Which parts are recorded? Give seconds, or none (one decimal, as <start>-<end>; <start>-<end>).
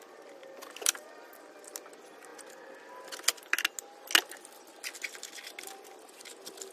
0.0-0.4; 1.5-6.7